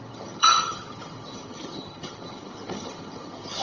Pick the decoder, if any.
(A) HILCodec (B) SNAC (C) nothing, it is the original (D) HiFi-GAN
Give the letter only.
D